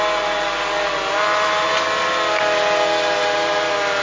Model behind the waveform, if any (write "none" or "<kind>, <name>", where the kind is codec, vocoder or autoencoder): none